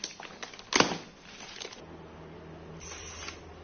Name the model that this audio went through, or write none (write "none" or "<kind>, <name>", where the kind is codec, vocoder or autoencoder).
none